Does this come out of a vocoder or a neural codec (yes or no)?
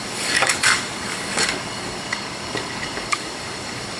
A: yes